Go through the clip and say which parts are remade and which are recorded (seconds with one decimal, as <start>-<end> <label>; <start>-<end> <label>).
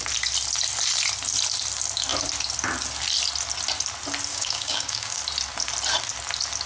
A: 0.0-4.3 recorded; 4.3-5.2 remade; 5.2-6.7 recorded